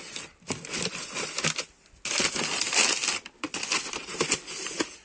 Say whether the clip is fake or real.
real